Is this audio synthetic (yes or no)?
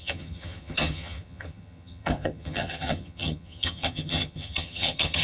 yes